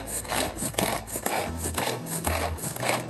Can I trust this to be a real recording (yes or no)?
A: no